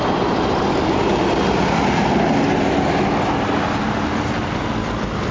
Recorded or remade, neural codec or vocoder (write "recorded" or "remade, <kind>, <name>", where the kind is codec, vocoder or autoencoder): recorded